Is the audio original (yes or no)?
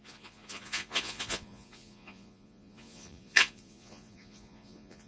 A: no